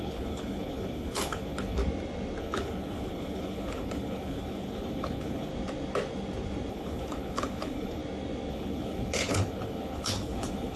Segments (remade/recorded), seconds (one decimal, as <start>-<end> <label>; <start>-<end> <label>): 0.0-1.8 remade; 1.8-2.4 recorded; 2.4-5.5 remade; 5.5-6.7 recorded; 6.7-8.0 remade; 8.0-8.5 recorded; 8.5-10.8 remade